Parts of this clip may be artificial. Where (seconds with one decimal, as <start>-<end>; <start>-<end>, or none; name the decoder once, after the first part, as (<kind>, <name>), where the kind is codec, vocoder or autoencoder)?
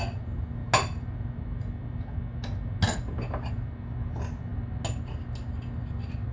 none